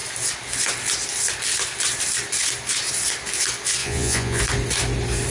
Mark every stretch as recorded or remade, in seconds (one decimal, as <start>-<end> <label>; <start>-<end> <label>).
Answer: 0.0-3.8 recorded; 3.8-4.4 remade; 4.4-5.3 recorded